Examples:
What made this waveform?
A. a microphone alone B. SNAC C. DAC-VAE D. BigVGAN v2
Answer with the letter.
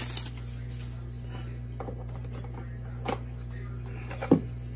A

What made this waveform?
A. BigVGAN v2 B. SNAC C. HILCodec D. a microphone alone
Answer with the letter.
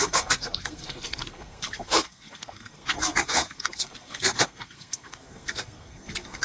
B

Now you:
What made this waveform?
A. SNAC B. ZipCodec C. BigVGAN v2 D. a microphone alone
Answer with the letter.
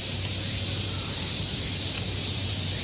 D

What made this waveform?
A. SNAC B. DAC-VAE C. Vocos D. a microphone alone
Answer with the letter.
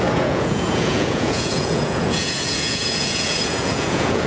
C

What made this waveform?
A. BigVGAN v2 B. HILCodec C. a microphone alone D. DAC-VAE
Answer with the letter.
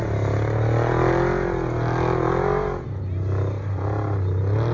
C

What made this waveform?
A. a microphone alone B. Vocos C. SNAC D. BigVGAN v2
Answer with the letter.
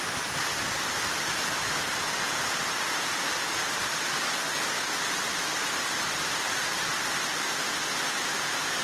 A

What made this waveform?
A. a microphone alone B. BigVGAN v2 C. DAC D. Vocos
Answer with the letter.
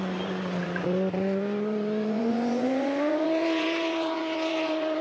D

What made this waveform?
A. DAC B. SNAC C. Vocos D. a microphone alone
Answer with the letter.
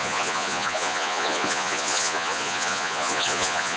C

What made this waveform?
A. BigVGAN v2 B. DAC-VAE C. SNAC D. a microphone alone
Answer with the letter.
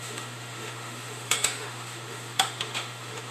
B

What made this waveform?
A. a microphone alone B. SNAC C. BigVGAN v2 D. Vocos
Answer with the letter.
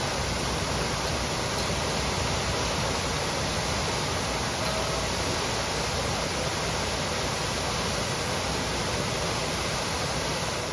A